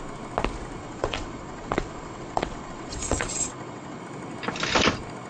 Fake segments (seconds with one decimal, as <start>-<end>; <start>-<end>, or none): 0.8-4.0